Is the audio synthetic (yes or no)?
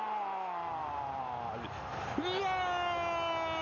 no